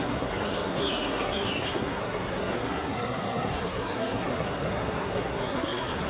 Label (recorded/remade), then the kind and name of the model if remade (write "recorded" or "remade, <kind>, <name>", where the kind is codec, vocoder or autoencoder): remade, codec, SNAC